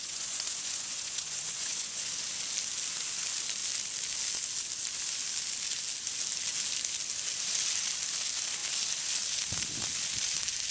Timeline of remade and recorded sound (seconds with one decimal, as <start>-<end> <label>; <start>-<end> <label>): 0.0-2.1 remade; 2.1-10.7 recorded